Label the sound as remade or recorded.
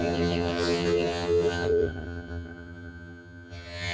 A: remade